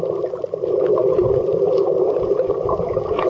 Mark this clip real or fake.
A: real